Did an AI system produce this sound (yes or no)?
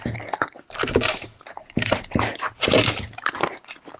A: no